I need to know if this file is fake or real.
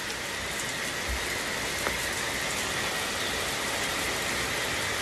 real